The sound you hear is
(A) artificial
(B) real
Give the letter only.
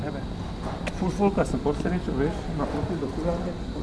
B